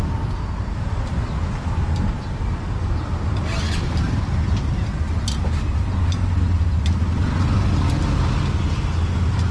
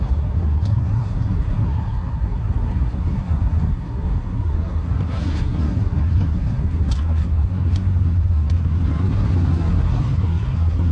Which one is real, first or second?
first